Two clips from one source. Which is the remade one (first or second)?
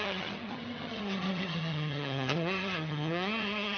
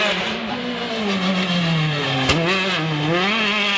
first